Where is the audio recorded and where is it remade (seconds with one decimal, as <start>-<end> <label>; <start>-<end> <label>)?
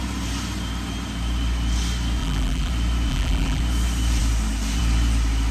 0.0-2.2 recorded; 2.2-2.7 remade; 2.7-3.1 recorded; 3.1-3.6 remade; 3.6-5.5 recorded